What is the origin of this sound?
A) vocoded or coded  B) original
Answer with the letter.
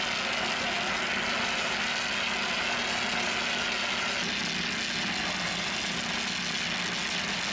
B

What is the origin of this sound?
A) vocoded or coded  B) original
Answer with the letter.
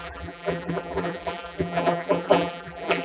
A